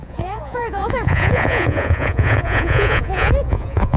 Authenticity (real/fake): fake